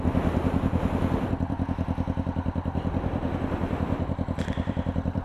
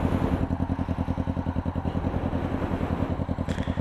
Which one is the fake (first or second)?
first